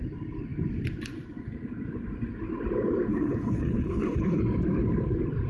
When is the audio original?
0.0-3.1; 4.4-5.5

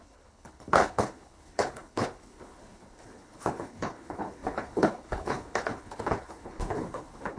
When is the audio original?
none

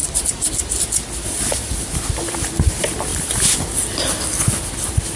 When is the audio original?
0.0-5.2

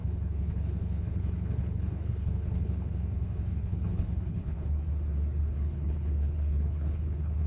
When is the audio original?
4.8-5.4